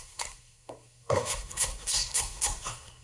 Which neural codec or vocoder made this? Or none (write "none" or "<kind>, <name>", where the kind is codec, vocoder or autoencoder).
codec, SNAC